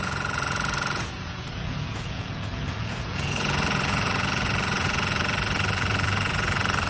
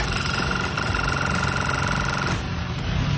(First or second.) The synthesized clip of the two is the first